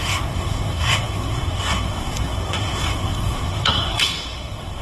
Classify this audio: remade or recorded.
remade